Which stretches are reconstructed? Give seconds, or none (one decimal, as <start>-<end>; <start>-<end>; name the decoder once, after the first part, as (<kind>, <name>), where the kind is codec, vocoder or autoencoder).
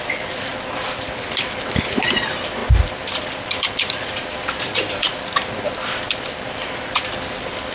none